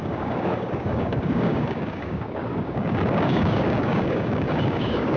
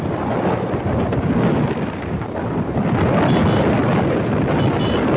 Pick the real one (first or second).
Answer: second